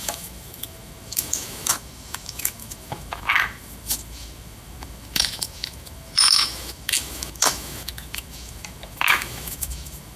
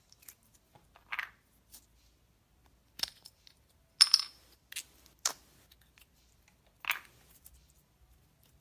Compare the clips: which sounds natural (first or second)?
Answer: second